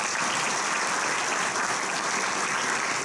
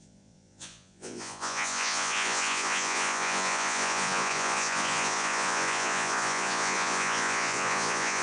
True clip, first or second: first